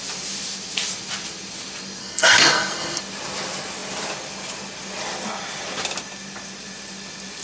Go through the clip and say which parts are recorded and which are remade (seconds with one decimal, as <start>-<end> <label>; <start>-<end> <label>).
0.0-2.0 recorded; 2.0-3.0 remade; 3.0-7.4 recorded